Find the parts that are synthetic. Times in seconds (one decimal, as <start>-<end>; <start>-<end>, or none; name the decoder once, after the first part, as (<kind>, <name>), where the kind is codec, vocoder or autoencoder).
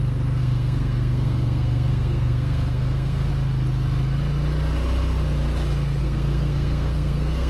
0.0-3.3 (codec, SNAC); 6.0-7.5